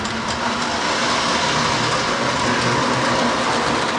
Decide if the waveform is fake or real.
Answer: real